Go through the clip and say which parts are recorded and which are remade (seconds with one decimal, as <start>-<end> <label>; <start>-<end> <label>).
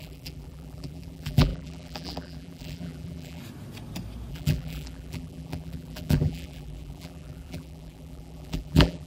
0.0-3.4 remade; 3.4-4.3 recorded; 4.3-9.1 remade